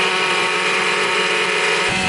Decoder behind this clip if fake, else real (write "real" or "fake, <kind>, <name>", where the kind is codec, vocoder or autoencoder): fake, vocoder, Vocos